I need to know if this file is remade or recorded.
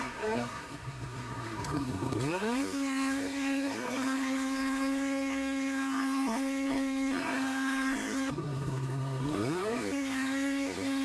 remade